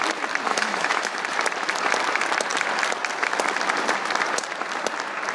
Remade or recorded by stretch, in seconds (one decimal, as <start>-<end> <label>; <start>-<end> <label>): 0.0-0.5 recorded; 0.5-1.2 remade; 1.2-5.3 recorded